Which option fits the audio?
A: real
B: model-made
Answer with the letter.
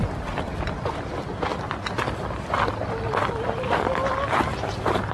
A